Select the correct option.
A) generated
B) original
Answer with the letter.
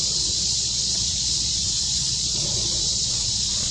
A